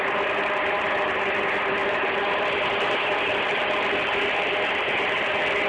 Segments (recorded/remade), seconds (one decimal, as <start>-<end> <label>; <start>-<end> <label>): 0.0-5.7 recorded